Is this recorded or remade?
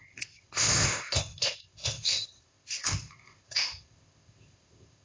remade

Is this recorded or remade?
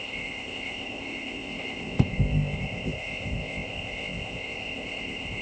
remade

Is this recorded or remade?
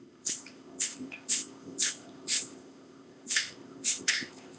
remade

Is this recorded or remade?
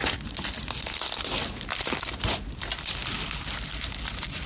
recorded